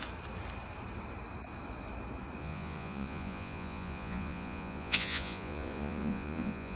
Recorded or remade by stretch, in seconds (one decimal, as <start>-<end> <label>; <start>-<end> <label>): 0.0-2.4 recorded; 2.4-6.8 remade